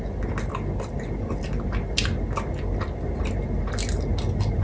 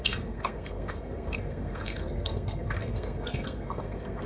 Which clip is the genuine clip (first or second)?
first